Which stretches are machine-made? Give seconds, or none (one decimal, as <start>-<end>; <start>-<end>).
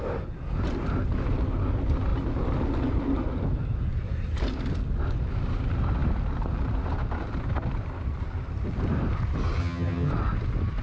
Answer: 9.6-10.1